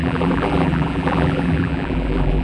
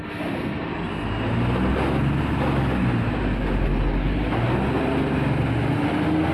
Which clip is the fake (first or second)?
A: first